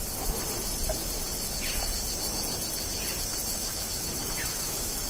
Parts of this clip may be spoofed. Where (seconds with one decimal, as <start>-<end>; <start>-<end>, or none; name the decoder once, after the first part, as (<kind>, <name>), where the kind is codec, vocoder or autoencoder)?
3.6-5.1 (autoencoder, DAC-VAE)